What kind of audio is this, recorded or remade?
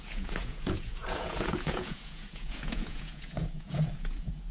remade